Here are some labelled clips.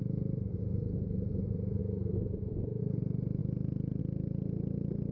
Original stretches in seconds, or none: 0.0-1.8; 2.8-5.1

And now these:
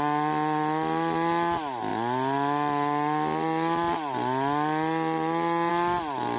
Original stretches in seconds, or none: 0.0-6.4

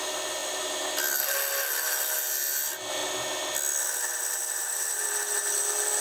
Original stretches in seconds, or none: 0.0-6.0

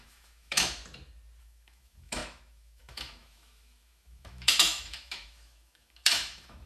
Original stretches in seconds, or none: 0.8-1.4

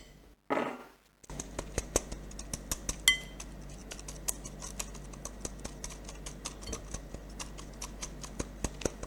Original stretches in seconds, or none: 0.0-9.1

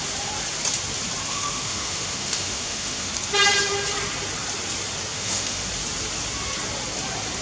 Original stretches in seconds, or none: 0.0-1.3; 3.1-5.1; 5.7-7.4

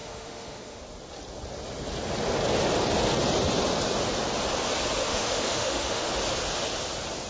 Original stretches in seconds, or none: 0.8-5.0; 6.1-7.3